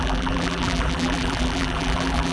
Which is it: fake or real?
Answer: fake